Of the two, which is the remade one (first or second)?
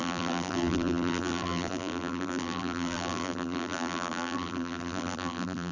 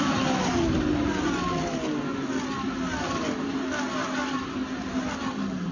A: first